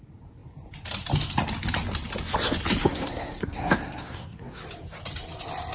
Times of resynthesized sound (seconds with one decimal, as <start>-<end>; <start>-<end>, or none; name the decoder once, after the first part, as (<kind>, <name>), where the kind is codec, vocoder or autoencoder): 2.8-4.6 (codec, SNAC)